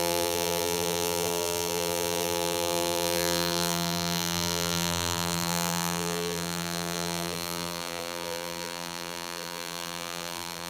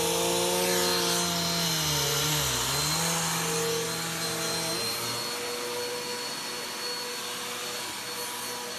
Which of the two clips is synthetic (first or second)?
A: first